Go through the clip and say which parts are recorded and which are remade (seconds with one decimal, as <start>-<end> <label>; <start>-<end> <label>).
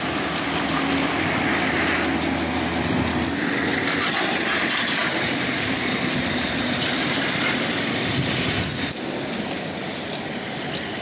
0.0-5.0 recorded; 5.0-7.2 remade; 7.2-11.0 recorded